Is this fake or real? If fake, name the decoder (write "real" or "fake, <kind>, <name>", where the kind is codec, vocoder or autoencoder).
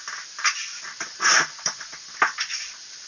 real